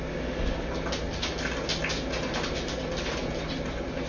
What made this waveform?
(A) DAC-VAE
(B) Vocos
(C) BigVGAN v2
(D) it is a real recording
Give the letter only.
D